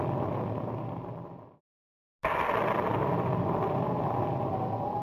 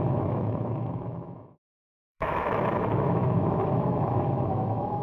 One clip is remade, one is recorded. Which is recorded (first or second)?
first